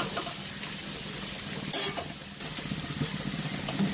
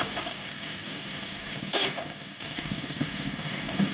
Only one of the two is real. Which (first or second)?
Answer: first